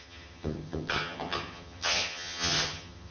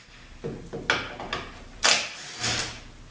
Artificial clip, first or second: first